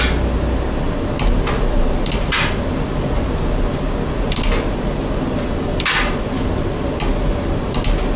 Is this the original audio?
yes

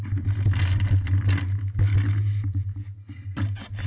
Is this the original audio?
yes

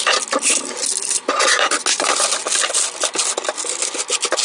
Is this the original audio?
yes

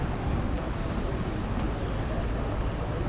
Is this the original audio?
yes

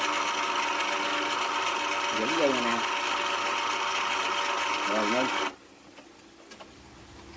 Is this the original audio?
yes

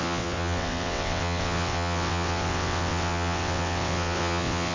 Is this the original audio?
no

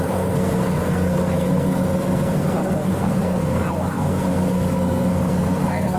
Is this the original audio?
no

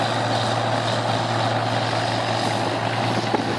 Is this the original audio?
yes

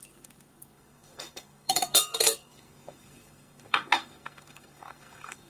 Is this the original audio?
no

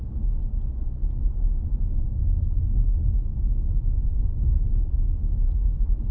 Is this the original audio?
yes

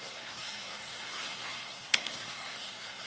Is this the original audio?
no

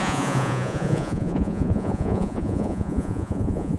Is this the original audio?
no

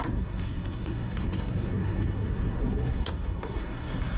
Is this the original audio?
no